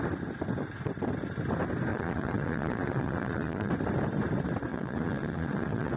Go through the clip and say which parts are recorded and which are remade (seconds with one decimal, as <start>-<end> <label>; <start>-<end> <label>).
0.0-1.9 recorded; 1.9-3.7 remade; 3.7-4.7 recorded; 4.7-6.0 remade